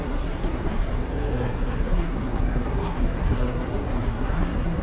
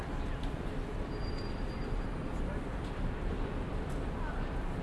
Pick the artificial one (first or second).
first